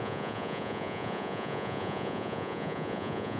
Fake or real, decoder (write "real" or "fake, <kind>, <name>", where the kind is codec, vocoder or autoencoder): fake, vocoder, Vocos